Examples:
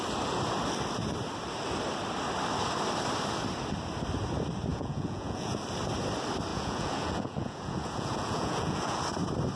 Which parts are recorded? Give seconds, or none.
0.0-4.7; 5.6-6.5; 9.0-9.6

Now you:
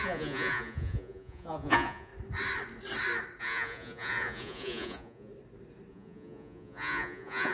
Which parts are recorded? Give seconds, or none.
2.1-3.4; 5.3-5.9

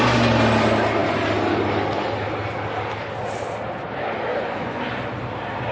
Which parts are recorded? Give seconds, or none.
0.0-4.3; 4.8-5.7